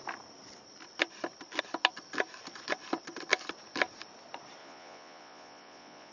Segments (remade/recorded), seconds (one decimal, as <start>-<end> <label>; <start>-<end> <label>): 0.0-4.6 recorded; 4.6-6.1 remade